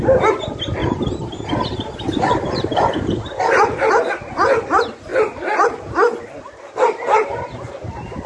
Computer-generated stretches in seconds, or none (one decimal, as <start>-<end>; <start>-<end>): 0.8-4.1